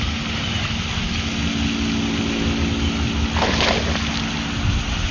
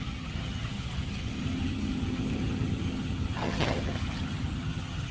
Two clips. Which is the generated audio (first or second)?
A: second